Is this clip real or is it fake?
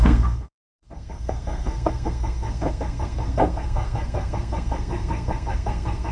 fake